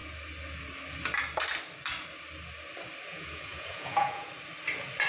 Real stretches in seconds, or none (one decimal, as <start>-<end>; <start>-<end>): 0.0-3.1; 4.3-5.1